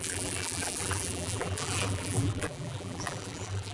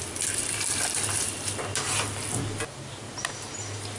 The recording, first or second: second